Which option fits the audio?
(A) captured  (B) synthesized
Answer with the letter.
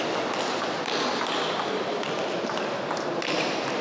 A